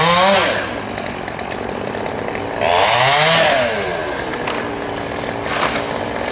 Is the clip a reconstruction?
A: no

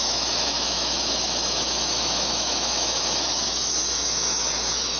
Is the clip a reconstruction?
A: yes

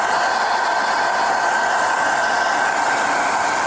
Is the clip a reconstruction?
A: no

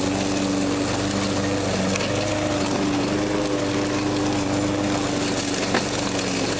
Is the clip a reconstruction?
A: no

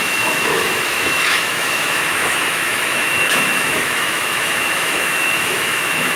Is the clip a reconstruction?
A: yes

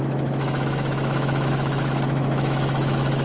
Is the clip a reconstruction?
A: yes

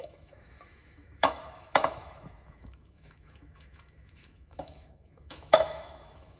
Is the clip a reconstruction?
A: yes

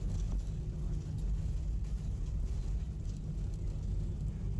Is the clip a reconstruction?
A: no